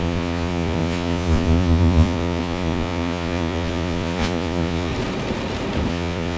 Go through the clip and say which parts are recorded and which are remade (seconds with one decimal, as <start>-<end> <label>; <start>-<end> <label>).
0.0-4.9 remade; 4.9-5.9 recorded; 5.9-6.4 remade